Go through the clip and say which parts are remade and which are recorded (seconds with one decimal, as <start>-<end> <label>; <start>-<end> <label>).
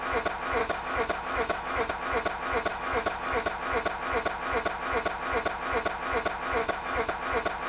0.0-0.6 recorded; 0.6-1.9 remade; 1.9-2.7 recorded; 2.7-3.5 remade; 3.5-6.6 recorded; 6.6-7.1 remade; 7.1-7.7 recorded